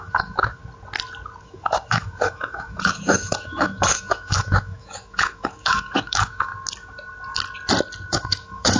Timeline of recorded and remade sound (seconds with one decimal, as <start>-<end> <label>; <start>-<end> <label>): 0.0-0.6 remade; 0.6-1.4 recorded; 1.4-6.5 remade; 6.5-8.1 recorded; 8.1-8.8 remade